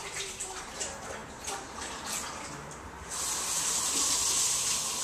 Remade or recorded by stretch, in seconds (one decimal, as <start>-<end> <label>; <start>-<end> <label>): 0.0-5.0 recorded